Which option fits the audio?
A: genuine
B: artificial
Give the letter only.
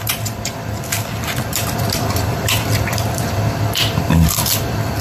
B